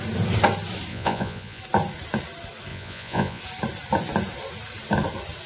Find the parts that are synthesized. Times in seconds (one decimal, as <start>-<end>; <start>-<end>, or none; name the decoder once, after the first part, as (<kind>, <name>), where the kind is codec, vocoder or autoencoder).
0.9-1.6 (vocoder, Vocos); 2.7-3.4